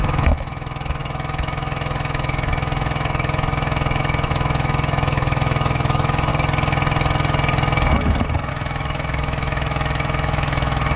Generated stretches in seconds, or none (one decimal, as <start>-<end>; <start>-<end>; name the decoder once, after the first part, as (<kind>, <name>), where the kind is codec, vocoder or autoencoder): 0.0-6.3 (autoencoder, DAC-VAE); 8.5-11.0